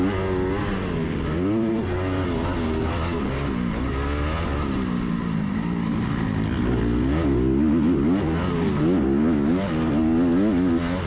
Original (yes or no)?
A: yes